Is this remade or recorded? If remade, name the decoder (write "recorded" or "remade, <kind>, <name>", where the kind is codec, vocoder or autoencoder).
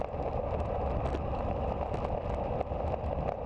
recorded